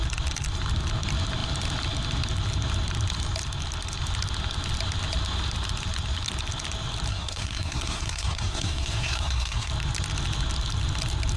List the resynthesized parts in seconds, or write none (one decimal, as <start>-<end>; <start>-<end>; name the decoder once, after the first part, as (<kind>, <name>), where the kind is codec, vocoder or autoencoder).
7.1-9.7 (codec, SNAC)